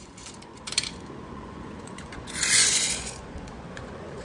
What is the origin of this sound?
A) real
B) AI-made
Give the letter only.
B